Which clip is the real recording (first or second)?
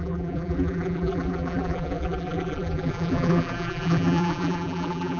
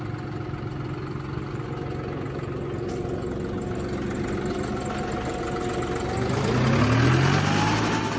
second